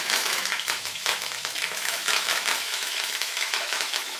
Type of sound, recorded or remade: remade